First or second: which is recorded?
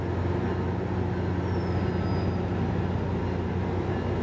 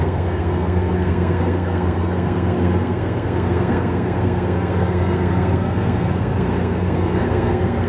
first